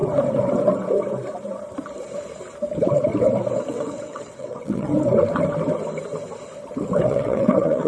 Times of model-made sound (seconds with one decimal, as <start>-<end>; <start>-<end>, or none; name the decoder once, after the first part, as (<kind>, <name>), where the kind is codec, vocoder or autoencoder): 3.7-4.9 (vocoder, WaveNeXt); 7.0-7.9